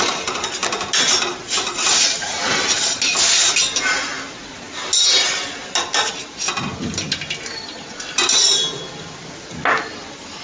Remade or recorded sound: recorded